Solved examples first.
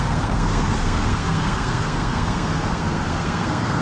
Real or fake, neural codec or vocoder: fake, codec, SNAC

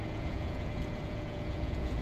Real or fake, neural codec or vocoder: fake, vocoder, Vocos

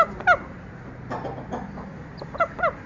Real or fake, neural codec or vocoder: real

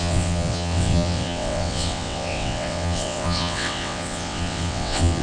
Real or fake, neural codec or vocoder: fake, vocoder, WaveNeXt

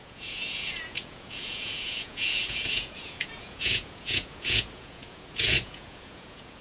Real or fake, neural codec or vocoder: fake, vocoder, Vocos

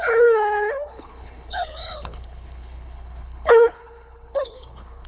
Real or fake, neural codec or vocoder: fake, codec, HILCodec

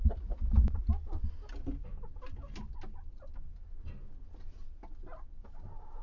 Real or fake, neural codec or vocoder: real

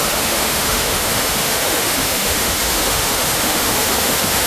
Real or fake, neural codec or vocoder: fake, autoencoder, DAC-VAE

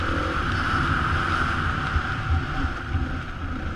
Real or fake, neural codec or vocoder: real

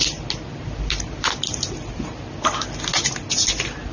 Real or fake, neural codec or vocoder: real